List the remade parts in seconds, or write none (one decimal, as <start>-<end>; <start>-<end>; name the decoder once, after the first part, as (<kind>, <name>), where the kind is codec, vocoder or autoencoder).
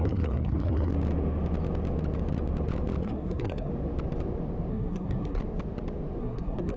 0.0-0.9 (codec, SNAC); 3.0-3.7; 4.7-5.4; 6.2-6.8